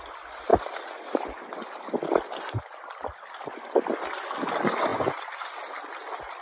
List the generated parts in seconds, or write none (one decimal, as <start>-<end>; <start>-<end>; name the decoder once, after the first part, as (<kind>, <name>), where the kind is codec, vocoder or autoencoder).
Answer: none